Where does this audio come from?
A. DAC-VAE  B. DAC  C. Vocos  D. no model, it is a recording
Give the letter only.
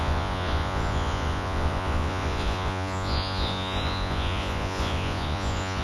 C